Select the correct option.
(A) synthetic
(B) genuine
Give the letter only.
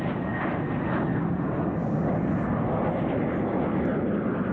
B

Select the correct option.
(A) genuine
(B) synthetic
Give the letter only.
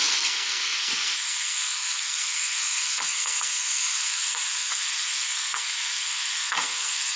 B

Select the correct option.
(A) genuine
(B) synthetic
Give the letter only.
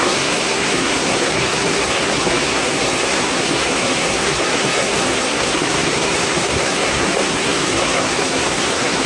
B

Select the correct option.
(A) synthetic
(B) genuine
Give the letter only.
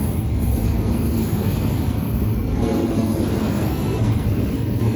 A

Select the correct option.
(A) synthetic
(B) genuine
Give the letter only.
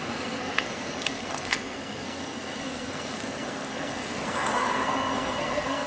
A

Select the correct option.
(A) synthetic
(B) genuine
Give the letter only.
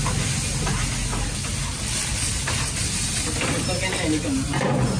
B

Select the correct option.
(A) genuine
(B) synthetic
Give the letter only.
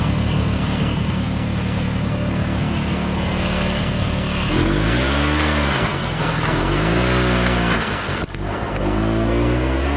B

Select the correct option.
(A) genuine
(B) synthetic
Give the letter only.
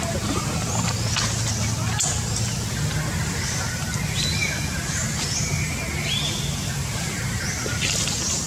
A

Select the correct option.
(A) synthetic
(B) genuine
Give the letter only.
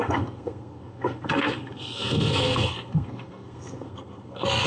A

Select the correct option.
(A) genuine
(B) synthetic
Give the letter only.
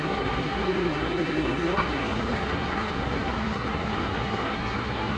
B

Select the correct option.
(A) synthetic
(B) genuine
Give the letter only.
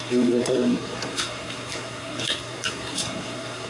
A